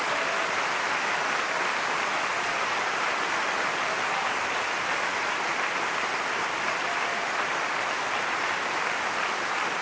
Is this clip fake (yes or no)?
no